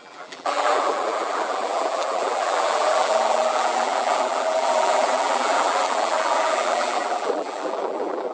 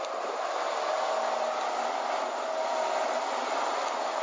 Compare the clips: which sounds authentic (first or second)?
second